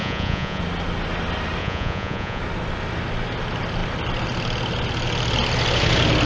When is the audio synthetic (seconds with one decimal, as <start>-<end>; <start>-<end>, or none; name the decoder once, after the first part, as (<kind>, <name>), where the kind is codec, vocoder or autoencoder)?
0.0-0.6 (vocoder, Vocos); 1.6-2.4